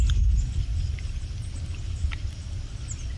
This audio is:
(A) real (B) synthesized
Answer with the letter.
A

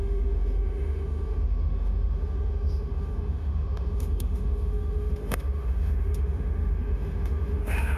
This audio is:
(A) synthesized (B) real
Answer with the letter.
A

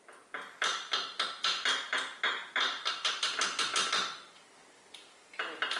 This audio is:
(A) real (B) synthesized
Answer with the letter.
A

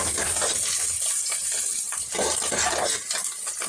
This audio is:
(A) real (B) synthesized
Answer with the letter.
A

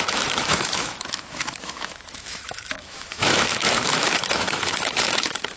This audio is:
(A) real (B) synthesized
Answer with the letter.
B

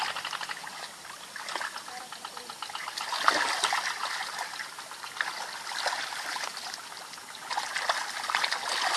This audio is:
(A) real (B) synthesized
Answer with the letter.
A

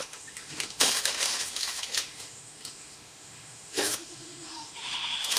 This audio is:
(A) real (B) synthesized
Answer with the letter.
B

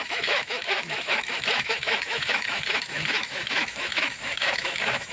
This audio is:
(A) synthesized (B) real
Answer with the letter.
A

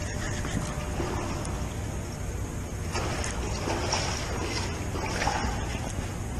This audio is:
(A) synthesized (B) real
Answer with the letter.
B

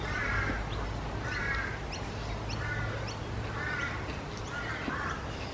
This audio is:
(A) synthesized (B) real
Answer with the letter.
B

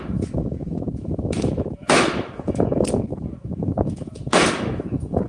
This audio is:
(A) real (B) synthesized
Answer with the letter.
B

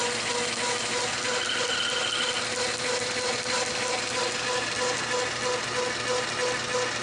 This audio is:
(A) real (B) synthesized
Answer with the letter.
A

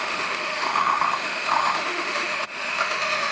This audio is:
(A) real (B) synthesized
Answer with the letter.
B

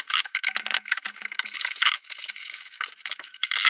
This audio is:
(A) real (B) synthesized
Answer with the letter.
B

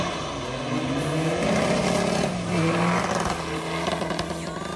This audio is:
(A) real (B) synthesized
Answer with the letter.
A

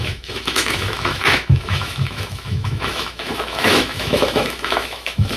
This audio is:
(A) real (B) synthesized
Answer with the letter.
B